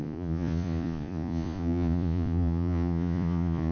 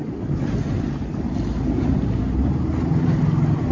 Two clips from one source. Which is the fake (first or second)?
first